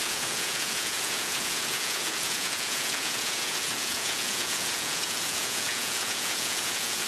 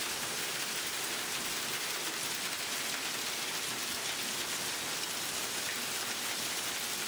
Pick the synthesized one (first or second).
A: first